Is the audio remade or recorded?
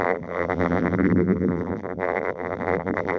remade